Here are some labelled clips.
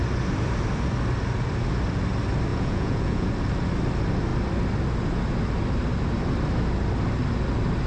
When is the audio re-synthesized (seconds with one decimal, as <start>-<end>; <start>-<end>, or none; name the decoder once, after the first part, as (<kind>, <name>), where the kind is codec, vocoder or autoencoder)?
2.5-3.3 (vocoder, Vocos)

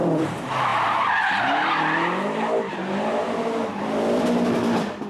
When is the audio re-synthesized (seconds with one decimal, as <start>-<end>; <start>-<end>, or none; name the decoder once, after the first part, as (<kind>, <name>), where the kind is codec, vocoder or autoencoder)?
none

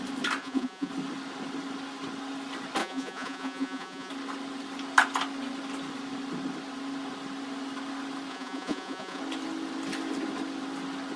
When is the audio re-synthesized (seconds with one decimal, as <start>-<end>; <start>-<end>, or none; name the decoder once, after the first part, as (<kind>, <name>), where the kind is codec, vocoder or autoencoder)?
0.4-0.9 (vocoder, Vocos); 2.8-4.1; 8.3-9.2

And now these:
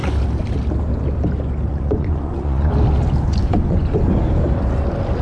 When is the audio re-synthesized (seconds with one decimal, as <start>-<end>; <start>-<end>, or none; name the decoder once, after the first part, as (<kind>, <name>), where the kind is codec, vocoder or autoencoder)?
1.7-2.7 (vocoder, Vocos); 3.4-4.0

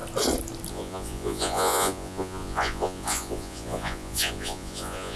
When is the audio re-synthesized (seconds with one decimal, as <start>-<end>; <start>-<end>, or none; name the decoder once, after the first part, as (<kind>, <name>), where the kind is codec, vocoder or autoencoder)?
0.7-5.2 (vocoder, Vocos)

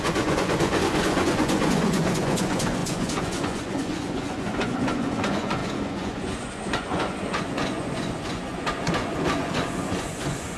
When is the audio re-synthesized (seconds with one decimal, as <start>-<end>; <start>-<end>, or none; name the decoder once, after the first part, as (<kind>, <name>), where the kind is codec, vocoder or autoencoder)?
0.0-10.6 (vocoder, Vocos)